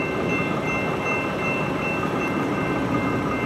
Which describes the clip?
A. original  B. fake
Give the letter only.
A